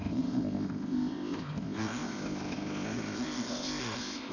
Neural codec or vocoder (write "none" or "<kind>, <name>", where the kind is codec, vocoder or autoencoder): codec, ZipCodec